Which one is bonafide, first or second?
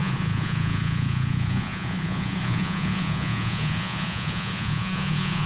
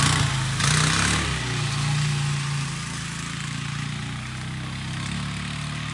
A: second